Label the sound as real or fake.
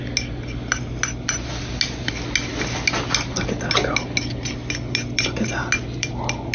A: real